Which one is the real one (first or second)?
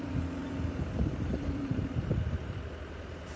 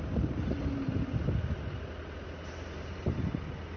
second